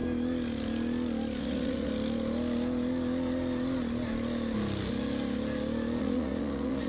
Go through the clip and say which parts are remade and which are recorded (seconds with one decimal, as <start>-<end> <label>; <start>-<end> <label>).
0.0-1.4 recorded; 1.4-1.9 remade; 1.9-6.0 recorded; 6.0-6.9 remade